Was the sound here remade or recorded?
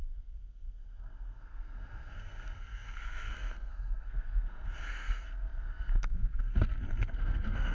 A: remade